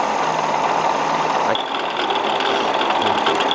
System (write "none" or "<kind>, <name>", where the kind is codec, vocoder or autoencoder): none